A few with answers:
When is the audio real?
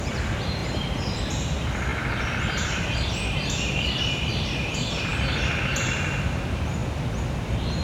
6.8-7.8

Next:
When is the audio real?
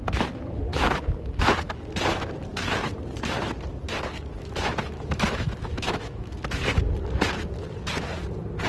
0.0-0.7; 1.4-4.3; 6.4-8.7